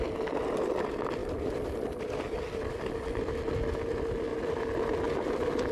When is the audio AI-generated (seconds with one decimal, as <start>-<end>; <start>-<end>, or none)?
none